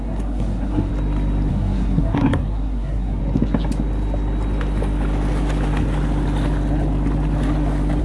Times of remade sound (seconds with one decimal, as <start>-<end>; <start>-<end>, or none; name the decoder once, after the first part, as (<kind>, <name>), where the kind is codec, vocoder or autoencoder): 0.0-0.9 (codec, SNAC); 1.5-3.2